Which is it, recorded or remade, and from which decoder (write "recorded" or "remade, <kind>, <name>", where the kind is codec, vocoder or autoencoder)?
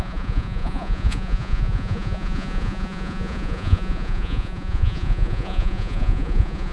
remade, vocoder, Vocos